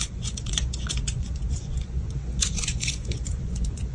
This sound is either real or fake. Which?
fake